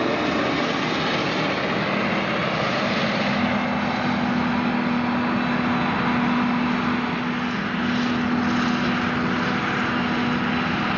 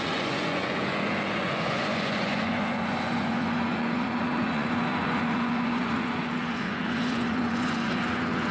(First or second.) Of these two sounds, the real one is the first